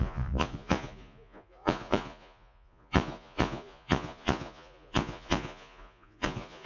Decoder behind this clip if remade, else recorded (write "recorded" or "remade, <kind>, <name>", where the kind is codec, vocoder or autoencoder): remade, vocoder, Vocos